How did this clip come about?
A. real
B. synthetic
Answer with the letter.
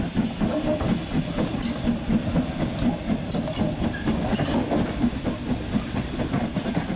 A